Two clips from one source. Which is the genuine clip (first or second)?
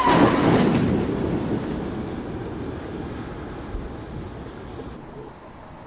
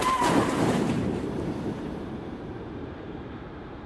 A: first